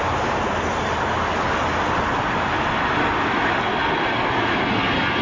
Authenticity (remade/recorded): recorded